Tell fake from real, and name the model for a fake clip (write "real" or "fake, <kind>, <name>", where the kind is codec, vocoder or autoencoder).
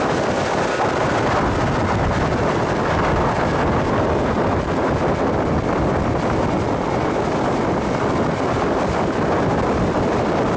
real